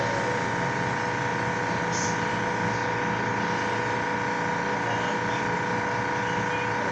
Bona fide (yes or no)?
yes